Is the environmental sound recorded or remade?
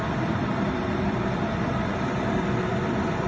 remade